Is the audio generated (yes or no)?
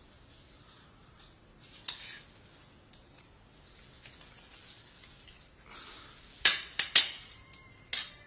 no